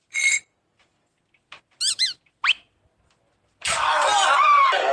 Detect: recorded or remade recorded